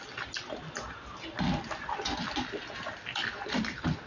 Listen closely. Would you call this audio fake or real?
real